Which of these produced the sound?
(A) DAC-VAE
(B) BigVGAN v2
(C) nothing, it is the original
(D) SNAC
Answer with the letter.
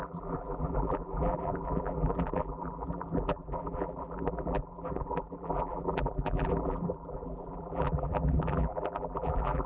B